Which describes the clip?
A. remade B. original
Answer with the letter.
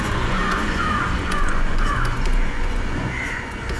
A